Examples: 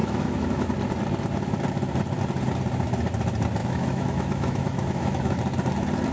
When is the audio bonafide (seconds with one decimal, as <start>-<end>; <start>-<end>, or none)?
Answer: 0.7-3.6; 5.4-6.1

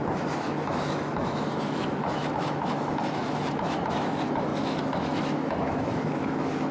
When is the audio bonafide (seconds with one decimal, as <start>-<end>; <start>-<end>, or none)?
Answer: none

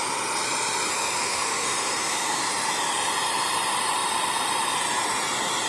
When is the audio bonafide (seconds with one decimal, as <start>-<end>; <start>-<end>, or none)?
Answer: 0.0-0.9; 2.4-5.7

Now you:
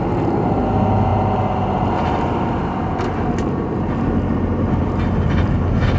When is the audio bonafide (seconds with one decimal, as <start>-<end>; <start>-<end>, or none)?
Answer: 0.0-6.0

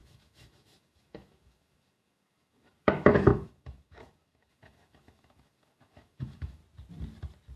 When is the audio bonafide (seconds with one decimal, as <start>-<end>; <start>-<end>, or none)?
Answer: 6.6-7.6

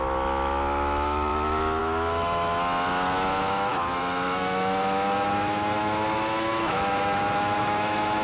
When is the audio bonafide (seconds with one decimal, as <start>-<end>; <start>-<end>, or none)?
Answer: none